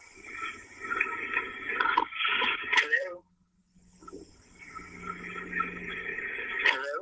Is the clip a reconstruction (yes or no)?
no